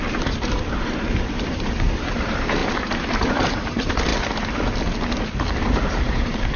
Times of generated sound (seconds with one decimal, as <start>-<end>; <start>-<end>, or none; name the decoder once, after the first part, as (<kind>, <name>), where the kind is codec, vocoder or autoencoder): 0.0-4.1 (vocoder, BigVGAN v2); 5.7-6.6